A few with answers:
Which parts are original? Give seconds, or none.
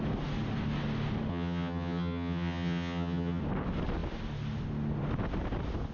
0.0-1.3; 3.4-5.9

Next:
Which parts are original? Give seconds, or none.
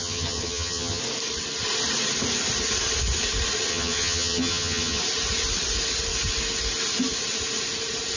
1.0-3.7; 5.0-8.2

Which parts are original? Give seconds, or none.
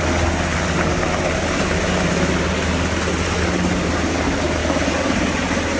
0.0-5.8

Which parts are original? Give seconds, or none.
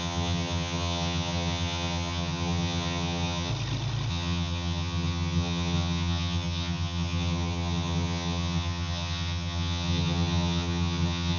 3.5-4.1